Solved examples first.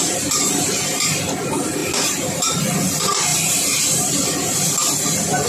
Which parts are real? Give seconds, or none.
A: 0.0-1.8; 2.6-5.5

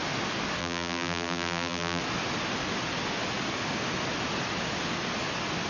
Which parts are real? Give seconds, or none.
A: 0.0-0.6; 2.0-5.7

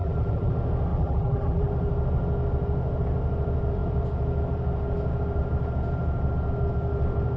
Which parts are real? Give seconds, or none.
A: 0.5-0.9; 1.7-7.4

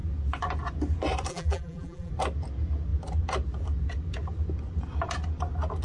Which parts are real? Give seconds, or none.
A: 0.0-1.3; 2.1-5.8

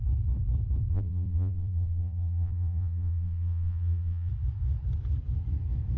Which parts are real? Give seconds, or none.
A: 0.0-0.9; 4.3-6.0

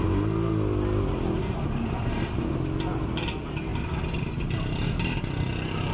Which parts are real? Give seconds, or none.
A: 0.0-5.9